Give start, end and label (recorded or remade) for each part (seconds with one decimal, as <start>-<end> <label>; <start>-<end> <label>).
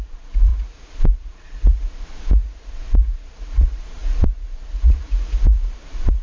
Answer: 0.0-6.2 remade